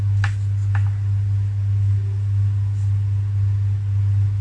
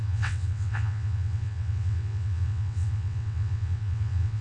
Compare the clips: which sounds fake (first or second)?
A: second